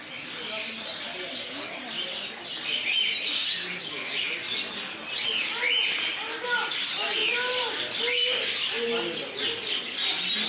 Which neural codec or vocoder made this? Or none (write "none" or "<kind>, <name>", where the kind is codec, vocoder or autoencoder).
none